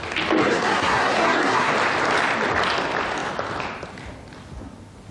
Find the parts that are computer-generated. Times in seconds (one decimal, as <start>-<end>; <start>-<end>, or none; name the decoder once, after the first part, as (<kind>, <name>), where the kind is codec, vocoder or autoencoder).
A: 0.4-1.7 (codec, SNAC)